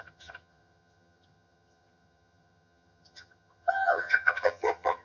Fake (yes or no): yes